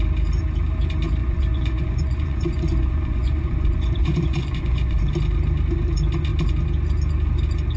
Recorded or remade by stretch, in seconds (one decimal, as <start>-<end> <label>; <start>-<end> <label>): 0.0-1.2 recorded; 1.2-5.1 remade; 5.1-7.8 recorded